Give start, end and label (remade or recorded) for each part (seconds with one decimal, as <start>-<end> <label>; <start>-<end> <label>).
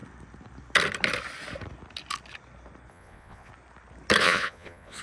0.0-2.9 recorded; 2.9-3.5 remade; 3.5-4.2 recorded; 4.2-5.0 remade